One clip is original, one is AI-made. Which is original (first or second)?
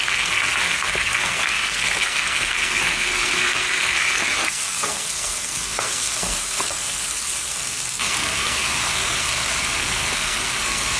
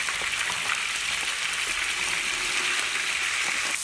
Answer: second